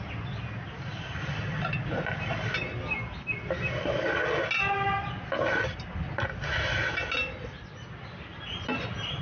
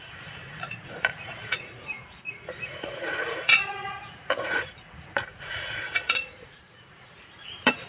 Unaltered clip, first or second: first